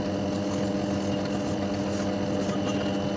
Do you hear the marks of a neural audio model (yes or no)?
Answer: no